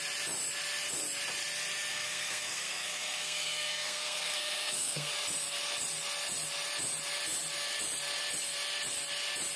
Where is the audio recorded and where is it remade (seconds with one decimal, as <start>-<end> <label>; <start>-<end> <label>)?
0.0-1.9 recorded; 1.9-5.1 remade; 5.1-9.6 recorded

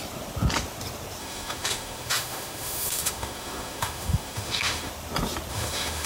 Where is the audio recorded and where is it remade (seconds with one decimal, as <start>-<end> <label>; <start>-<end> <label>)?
0.0-1.2 recorded; 1.2-4.9 remade; 4.9-5.5 recorded; 5.5-6.1 remade

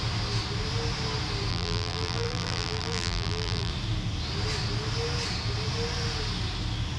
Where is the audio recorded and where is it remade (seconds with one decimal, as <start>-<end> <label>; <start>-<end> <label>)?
0.0-1.5 recorded; 1.5-3.7 remade; 3.7-7.0 recorded

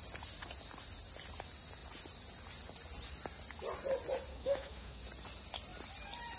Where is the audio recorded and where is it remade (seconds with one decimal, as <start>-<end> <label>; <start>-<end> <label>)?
0.0-4.3 recorded; 4.3-5.0 remade; 5.0-6.4 recorded